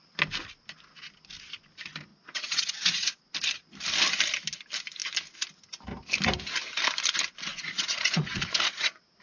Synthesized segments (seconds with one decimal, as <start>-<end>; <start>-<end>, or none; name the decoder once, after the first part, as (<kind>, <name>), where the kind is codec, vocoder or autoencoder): 2.1-3.2 (vocoder, Vocos); 7.5-9.2